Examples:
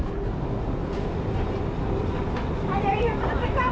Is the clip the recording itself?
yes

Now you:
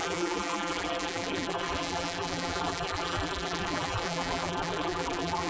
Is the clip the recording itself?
no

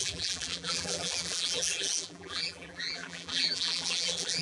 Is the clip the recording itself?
no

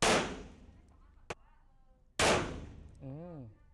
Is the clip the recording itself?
yes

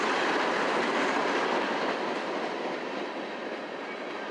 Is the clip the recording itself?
yes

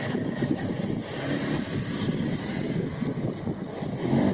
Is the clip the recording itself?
yes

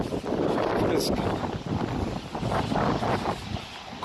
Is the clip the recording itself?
yes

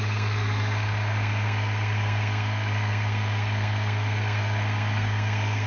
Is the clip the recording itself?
no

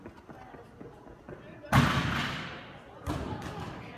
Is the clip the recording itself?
yes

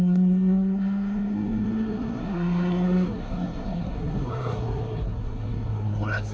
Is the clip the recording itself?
no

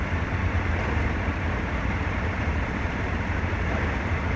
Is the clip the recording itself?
yes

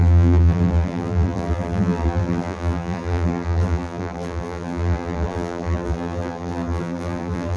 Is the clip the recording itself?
no